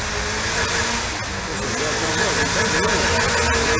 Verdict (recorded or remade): recorded